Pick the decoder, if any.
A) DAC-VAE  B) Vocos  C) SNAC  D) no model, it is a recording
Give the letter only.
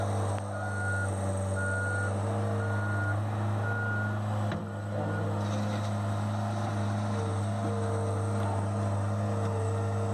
D